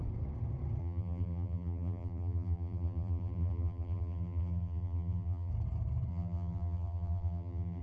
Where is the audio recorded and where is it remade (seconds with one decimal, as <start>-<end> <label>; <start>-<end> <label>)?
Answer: 0.0-0.8 recorded; 0.8-5.5 remade; 5.5-6.1 recorded; 6.1-7.8 remade